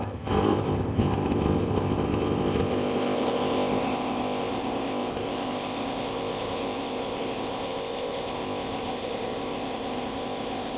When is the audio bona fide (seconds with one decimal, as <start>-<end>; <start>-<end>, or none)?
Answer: none